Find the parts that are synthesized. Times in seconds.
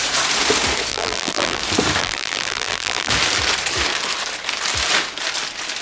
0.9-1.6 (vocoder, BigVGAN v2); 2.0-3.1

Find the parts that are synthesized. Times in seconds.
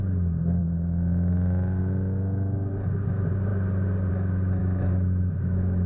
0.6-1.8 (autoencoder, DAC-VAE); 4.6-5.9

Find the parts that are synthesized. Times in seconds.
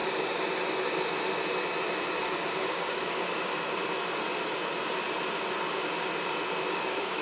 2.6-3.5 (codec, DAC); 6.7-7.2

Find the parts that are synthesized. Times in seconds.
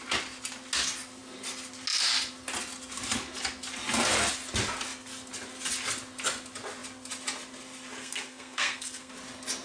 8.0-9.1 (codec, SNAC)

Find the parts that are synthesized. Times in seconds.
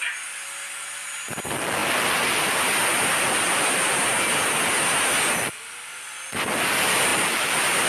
none